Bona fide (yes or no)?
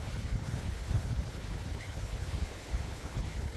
no